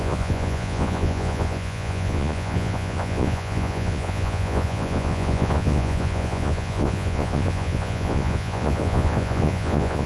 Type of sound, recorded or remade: remade